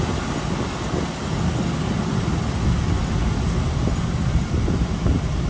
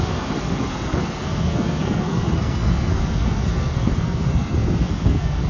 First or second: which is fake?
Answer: second